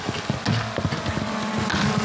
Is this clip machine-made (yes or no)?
no